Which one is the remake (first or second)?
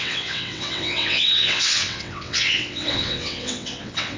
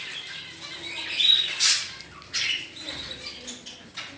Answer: first